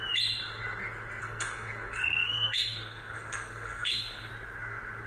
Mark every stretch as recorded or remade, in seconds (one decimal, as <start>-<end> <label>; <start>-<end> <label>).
0.0-1.2 recorded; 1.2-4.3 remade; 4.3-5.1 recorded